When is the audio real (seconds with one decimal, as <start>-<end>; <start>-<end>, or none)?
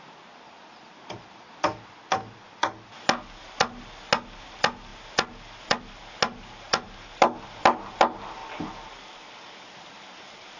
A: 0.0-10.6